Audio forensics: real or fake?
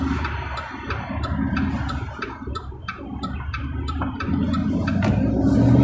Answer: real